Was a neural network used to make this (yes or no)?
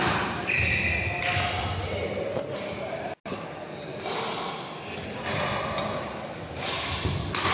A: no